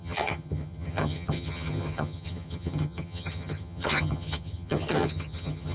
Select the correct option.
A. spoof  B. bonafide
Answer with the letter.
A